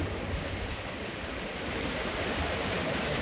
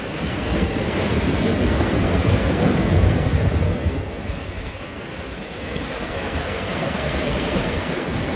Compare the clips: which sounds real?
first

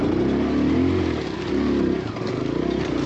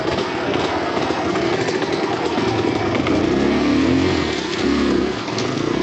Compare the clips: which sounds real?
first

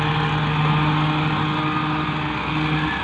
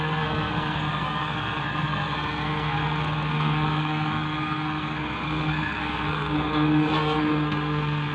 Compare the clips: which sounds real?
first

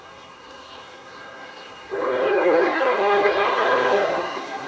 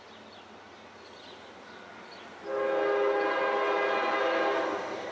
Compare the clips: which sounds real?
second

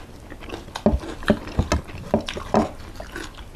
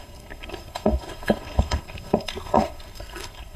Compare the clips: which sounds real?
first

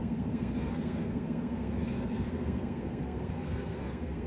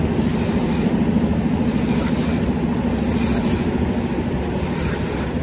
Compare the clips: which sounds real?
second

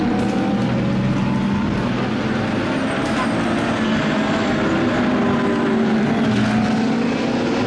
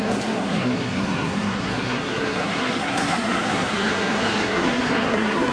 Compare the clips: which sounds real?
first